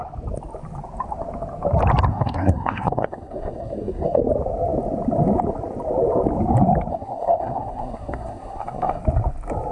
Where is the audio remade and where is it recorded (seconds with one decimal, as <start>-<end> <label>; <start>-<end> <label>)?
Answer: 0.0-2.1 recorded; 2.1-4.2 remade; 4.2-6.9 recorded; 6.9-9.0 remade; 9.0-9.7 recorded